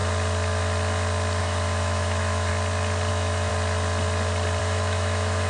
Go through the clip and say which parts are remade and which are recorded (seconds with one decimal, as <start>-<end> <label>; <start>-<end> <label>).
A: 0.0-1.4 recorded; 1.4-2.5 remade; 2.5-3.1 recorded; 3.1-3.5 remade; 3.5-4.6 recorded; 4.6-5.5 remade